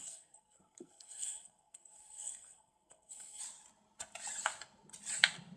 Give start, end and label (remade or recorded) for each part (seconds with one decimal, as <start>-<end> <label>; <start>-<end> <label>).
0.0-3.4 remade; 3.4-5.6 recorded